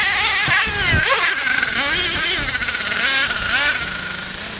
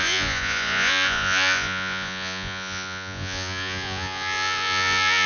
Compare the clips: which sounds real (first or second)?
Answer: first